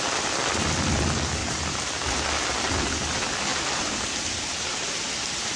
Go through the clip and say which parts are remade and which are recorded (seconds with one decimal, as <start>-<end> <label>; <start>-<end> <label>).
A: 0.0-1.4 recorded; 1.4-2.1 remade; 2.1-3.5 recorded; 3.5-4.9 remade; 4.9-5.6 recorded